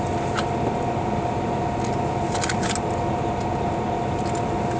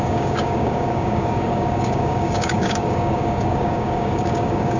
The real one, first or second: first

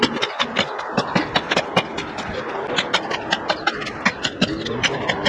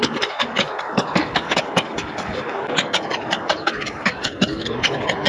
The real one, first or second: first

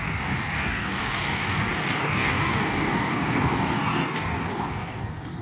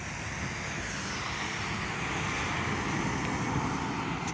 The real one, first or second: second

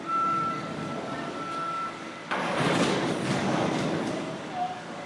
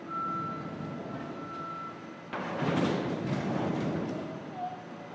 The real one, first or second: second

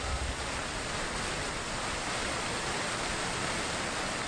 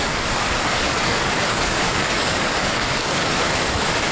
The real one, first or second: first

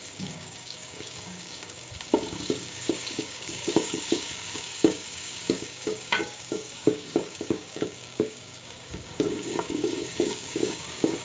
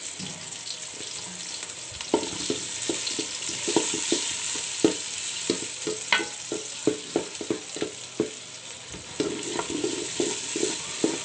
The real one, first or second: second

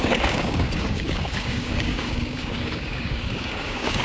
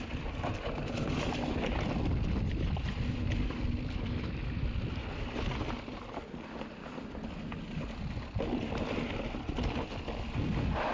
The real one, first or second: second